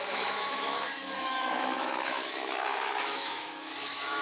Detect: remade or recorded remade